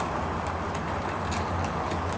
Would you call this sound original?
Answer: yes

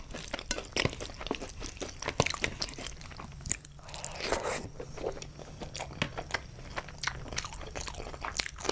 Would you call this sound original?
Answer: yes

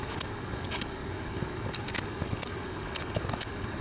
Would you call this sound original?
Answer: no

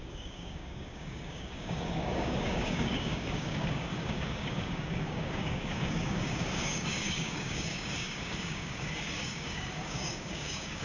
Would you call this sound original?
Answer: no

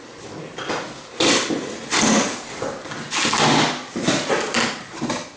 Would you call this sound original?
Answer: yes